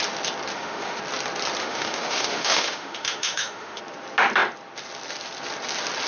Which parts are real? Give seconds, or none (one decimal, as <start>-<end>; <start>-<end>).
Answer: 0.0-0.5; 1.0-1.6; 3.8-6.1